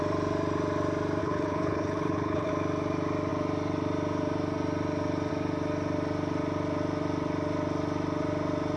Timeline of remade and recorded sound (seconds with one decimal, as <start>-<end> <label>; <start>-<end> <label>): 0.0-1.2 recorded; 1.2-2.5 remade; 2.5-8.8 recorded